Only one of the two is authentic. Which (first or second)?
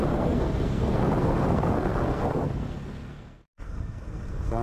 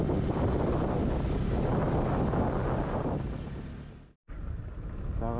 second